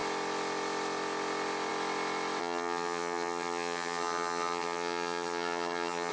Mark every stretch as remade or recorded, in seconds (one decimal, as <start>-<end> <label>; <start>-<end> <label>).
0.0-2.4 recorded; 2.4-6.1 remade